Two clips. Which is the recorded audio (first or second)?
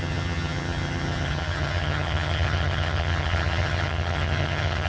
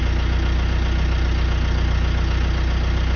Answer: second